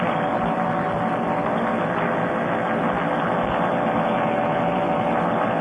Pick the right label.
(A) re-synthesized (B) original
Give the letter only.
B